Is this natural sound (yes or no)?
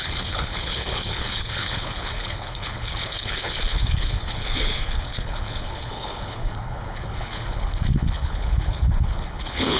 no